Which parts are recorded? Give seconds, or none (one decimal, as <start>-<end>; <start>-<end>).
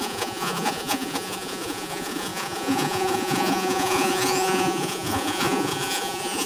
none